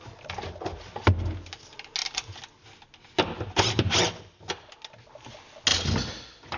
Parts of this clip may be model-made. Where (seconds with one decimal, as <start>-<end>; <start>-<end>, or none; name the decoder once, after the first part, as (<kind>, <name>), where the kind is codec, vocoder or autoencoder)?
none